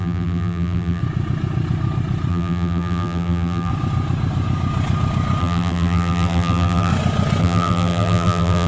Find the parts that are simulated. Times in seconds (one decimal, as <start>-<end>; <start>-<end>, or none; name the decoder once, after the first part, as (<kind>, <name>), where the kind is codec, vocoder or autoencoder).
0.0-1.0 (vocoder, BigVGAN v2); 2.3-3.7; 5.4-6.9; 7.4-8.7